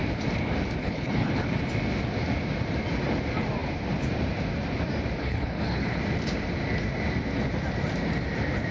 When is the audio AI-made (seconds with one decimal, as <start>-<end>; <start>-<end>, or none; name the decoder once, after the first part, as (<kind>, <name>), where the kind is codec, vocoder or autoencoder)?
0.8-1.3 (codec, HILCodec); 5.2-6.0